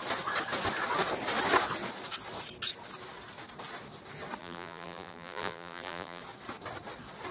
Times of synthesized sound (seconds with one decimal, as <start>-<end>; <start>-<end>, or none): 4.4-6.2